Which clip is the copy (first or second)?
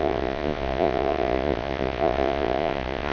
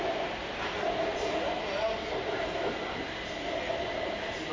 first